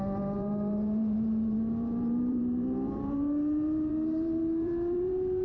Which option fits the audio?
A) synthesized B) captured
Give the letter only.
A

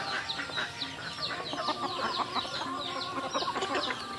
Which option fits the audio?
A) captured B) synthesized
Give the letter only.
A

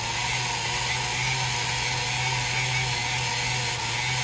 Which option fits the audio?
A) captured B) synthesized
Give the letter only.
A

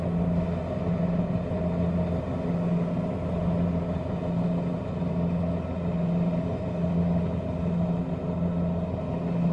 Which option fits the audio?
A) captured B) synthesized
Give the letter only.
A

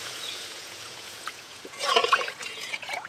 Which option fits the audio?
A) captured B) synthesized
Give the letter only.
B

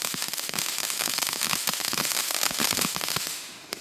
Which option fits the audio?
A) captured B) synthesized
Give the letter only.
B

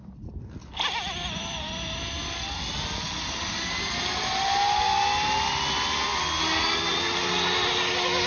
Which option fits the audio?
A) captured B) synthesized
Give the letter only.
A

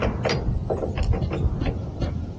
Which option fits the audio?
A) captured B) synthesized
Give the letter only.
A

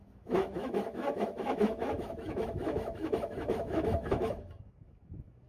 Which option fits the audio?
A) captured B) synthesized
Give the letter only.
B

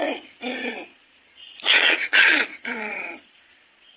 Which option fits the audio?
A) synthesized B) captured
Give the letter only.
A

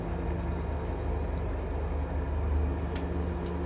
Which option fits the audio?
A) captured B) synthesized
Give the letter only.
A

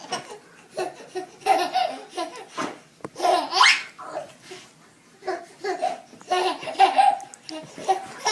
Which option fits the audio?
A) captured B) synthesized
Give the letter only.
A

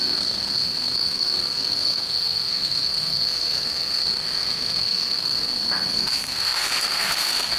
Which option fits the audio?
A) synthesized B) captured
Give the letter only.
A